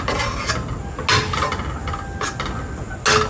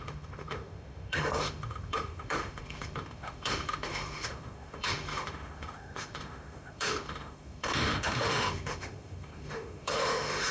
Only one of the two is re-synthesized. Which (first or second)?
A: second